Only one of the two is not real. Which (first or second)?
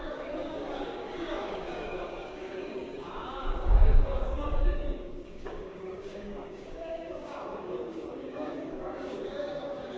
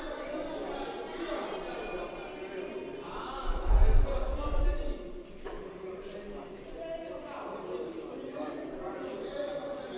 first